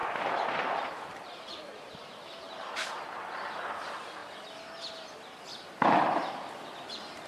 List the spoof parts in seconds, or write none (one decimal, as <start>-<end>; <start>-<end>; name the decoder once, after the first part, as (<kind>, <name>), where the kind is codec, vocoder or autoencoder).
0.0-3.2 (vocoder, BigVGAN v2); 5.5-6.3